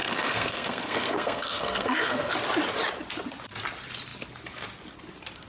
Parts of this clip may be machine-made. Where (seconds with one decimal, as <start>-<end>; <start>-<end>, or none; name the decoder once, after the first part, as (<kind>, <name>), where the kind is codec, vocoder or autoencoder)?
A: 0.0-2.3 (codec, SNAC)